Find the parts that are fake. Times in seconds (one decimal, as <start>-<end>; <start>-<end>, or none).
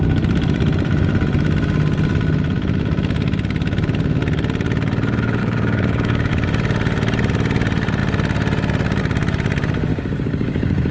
5.4-6.3; 9.9-10.9